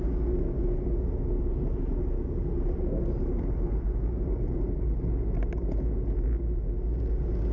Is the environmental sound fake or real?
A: real